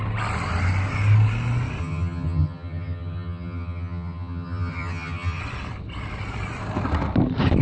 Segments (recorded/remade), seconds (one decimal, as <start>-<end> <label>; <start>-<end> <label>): 0.0-1.8 recorded; 1.8-5.4 remade; 5.4-7.6 recorded